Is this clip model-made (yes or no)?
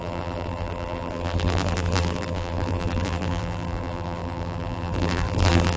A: yes